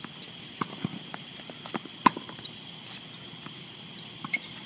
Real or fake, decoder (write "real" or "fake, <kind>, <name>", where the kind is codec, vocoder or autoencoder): real